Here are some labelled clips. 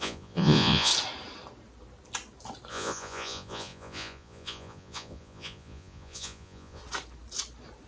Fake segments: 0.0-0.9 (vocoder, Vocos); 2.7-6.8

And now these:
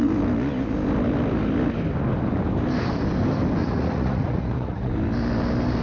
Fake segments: 3.6-4.9 (vocoder, Vocos)

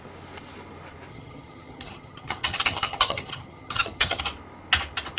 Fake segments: 1.1-4.2 (vocoder, HiFi-GAN)

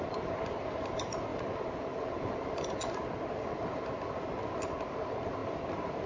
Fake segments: none

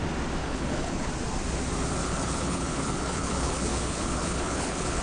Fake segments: 0.4-1.1 (codec, HILCodec); 2.0-5.0

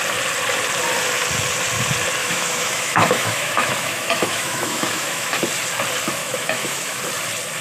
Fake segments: 2.2-5.4 (autoencoder, DAC-VAE); 6.2-7.0